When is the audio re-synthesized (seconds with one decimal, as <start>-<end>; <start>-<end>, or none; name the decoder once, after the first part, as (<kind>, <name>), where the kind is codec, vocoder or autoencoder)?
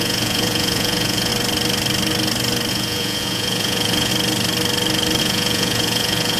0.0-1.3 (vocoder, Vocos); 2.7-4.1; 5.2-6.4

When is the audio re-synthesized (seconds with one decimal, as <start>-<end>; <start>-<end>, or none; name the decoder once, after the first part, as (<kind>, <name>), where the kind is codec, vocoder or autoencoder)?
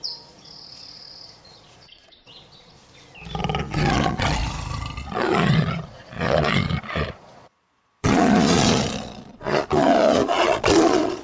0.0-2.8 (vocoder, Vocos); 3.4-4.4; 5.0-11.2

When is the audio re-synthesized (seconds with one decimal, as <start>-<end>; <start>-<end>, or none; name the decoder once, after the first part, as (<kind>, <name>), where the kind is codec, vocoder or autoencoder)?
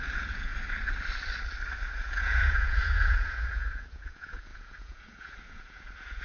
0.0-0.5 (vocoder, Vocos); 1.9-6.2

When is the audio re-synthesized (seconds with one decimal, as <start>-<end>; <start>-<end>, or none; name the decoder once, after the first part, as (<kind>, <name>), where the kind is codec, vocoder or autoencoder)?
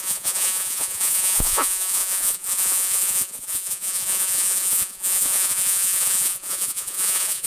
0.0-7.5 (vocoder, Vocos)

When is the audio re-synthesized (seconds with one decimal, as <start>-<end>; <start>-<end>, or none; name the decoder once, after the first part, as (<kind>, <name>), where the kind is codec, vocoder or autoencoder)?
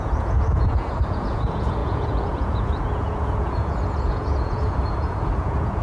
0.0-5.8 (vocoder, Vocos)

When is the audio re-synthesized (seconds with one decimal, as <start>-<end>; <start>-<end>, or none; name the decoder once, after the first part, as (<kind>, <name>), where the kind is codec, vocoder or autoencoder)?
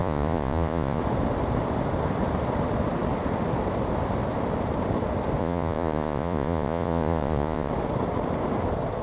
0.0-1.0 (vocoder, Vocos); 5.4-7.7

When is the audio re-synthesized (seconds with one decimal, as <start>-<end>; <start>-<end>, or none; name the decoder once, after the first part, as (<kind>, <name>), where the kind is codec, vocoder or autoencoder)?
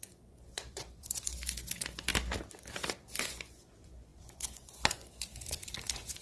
0.0-2.1 (vocoder, Vocos); 3.2-6.2